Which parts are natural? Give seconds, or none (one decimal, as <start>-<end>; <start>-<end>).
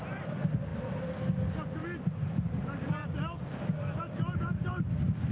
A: 0.0-5.3